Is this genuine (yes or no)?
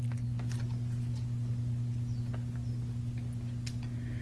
yes